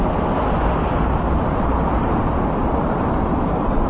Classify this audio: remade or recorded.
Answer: recorded